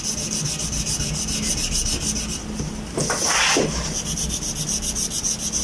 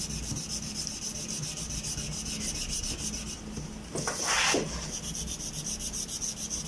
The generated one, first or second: second